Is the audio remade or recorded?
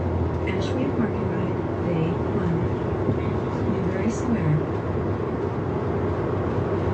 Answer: recorded